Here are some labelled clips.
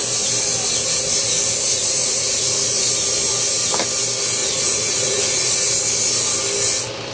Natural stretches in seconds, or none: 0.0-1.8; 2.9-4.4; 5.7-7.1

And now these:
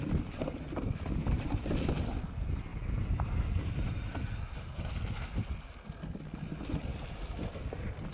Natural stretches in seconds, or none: 0.0-8.1

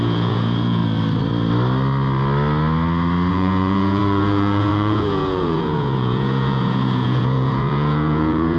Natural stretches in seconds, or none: 0.8-3.3

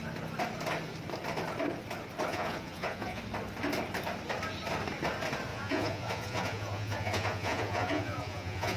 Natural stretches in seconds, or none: 0.0-2.3; 3.2-5.5

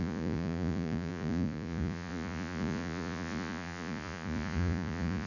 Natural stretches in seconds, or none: none